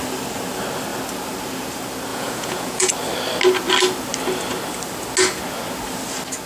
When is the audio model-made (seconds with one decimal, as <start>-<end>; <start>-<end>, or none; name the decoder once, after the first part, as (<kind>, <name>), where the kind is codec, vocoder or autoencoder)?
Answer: 2.1-2.9 (vocoder, Vocos)